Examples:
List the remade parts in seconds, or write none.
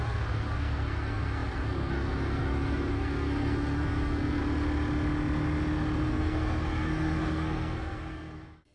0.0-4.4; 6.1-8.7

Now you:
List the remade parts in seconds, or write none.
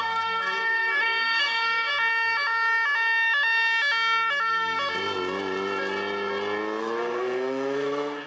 0.0-1.9; 6.8-8.3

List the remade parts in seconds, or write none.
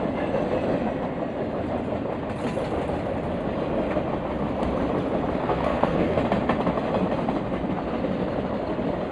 5.4-6.2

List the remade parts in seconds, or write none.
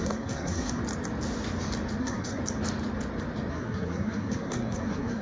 0.0-0.8; 2.0-2.4; 3.5-5.2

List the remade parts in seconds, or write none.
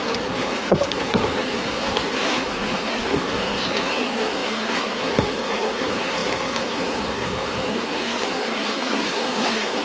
0.0-9.8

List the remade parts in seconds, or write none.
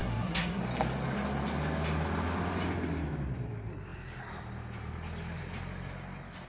0.0-0.6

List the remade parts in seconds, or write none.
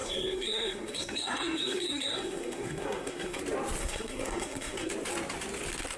0.0-3.4; 3.8-4.9